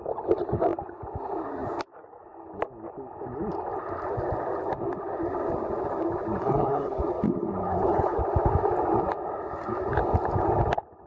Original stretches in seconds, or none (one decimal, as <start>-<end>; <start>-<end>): 0.0-6.4; 7.0-7.6; 8.2-11.1